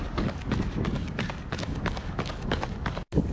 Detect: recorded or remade remade